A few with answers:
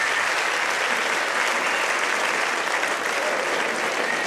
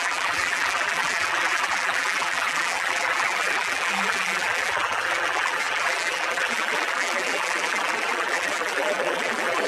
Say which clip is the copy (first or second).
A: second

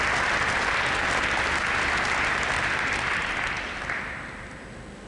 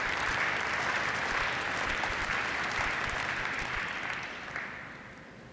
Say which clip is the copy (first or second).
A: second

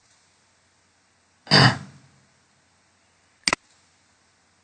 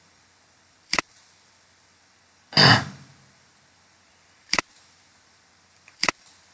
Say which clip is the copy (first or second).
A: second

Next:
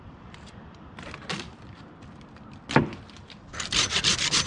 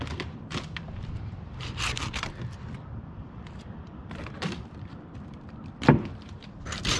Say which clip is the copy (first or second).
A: second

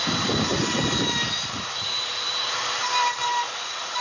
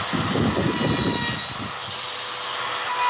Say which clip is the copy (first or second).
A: first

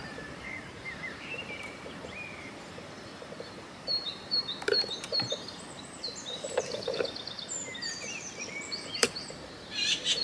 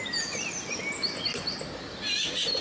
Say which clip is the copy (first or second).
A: first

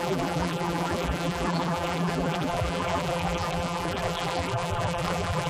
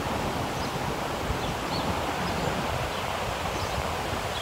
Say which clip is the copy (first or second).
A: first